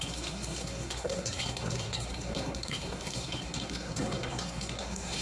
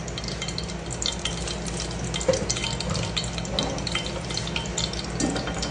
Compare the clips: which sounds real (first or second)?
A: second